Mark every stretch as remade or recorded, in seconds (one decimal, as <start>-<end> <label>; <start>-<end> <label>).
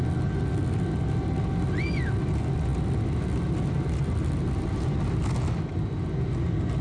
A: 0.0-6.8 recorded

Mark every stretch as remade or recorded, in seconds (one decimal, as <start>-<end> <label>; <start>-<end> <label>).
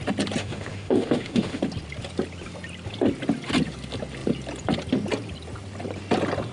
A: 0.0-0.4 recorded; 0.4-1.6 remade; 1.6-6.5 recorded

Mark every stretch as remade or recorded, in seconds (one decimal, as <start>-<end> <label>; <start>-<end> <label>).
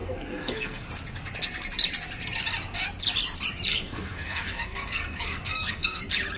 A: 0.0-0.9 remade; 0.9-3.7 recorded; 3.7-6.0 remade; 6.0-6.4 recorded